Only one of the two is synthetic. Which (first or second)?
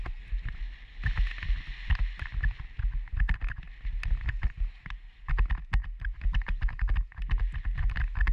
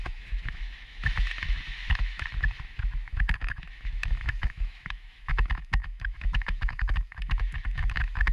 second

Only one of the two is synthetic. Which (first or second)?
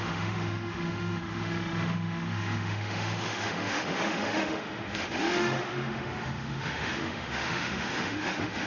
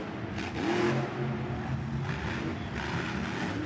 first